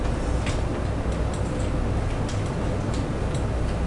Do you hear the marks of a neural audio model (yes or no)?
no